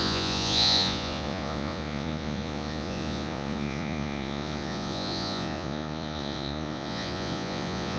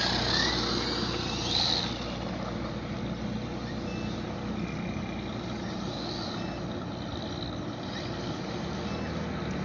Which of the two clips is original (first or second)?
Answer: second